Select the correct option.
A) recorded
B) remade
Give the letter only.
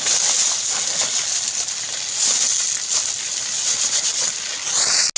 A